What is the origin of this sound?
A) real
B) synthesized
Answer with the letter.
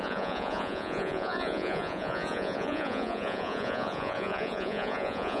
B